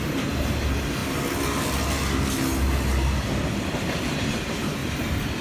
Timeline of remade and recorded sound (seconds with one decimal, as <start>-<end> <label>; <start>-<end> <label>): 0.0-1.0 remade; 1.0-4.2 recorded; 4.2-4.8 remade; 4.8-5.4 recorded